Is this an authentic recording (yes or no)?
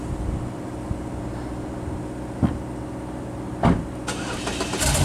yes